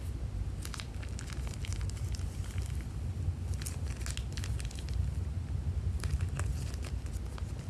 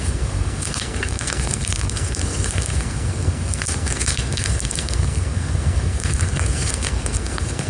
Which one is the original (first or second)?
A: first